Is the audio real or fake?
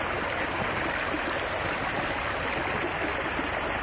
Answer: real